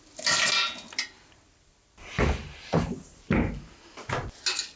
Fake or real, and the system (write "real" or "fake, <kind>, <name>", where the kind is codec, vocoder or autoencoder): real